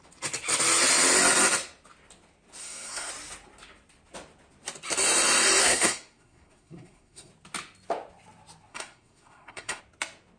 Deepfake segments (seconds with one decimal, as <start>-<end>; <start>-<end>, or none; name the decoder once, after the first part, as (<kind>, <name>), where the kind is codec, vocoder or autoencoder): 2.6-3.1 (codec, SNAC); 5.6-7.3; 8.7-9.8